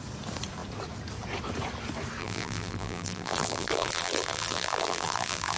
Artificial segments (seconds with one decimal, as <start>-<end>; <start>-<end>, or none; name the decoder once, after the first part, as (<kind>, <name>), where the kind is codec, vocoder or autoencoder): 2.2-5.6 (vocoder, BigVGAN v2)